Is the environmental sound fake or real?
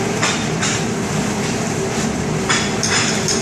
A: fake